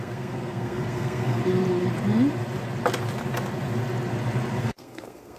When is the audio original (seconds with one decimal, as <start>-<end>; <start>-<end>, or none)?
1.4-4.6